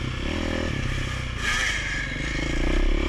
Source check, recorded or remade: recorded